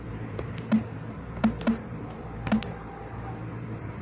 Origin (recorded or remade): remade